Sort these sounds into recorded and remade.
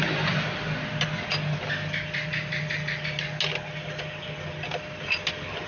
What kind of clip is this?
recorded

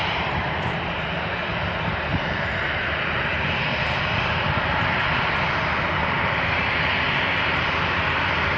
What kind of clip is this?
remade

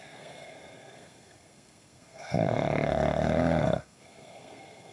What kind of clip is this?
remade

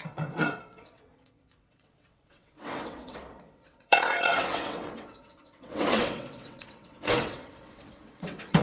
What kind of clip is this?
remade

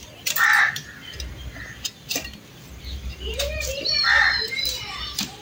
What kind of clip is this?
remade